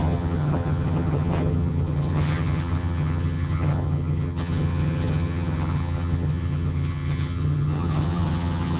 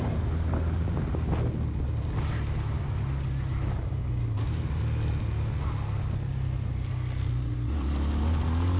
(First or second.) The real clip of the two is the second